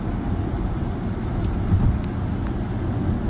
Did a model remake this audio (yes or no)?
no